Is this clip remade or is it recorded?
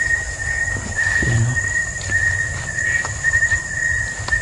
recorded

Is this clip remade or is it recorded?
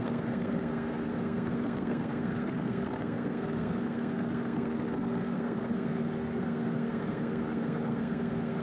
remade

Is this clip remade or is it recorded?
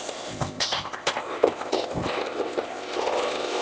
remade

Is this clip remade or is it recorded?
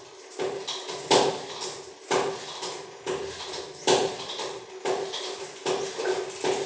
recorded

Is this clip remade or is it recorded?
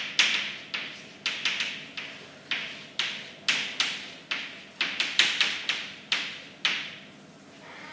recorded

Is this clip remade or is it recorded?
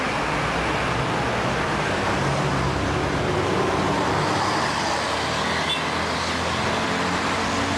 recorded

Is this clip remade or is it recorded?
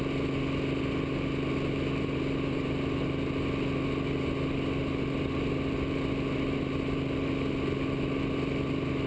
recorded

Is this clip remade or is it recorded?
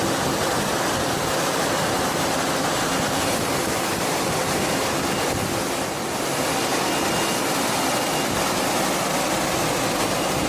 recorded